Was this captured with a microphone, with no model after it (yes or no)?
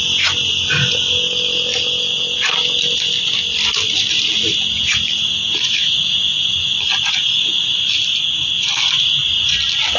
yes